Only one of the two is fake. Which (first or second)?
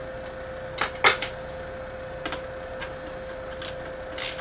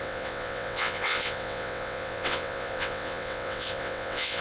second